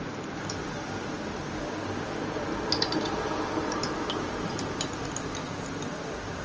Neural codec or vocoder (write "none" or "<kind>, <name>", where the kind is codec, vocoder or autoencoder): none